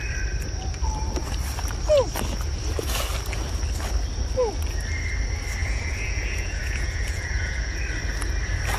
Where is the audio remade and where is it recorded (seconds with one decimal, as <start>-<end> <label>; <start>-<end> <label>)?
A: 0.0-5.6 recorded; 5.6-7.8 remade; 7.8-8.8 recorded